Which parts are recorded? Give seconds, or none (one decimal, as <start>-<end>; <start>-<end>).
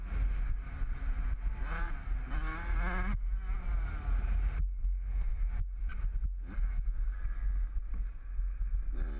0.0-4.8; 5.5-9.2